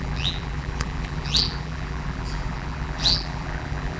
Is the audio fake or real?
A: fake